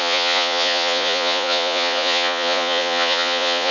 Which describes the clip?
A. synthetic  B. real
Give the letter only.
A